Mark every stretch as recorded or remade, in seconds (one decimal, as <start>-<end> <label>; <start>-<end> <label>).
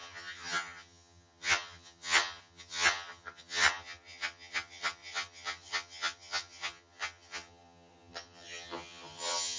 0.0-9.6 remade